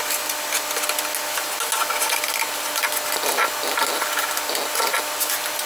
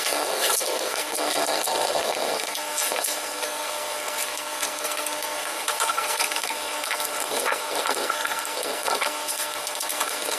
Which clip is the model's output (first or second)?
second